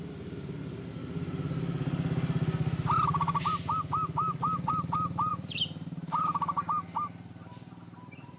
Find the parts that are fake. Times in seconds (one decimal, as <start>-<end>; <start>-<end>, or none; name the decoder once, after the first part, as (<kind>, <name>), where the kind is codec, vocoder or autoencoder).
0.0-1.0 (vocoder, BigVGAN v2); 4.7-8.4